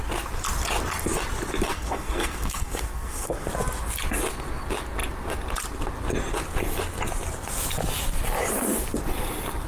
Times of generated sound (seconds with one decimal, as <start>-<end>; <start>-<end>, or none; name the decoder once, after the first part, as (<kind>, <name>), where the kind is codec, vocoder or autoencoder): 1.7-3.5 (codec, SNAC)